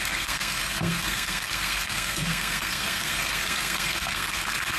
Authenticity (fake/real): fake